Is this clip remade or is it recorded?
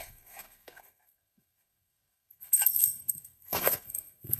remade